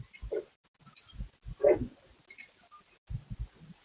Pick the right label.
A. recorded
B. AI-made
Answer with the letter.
A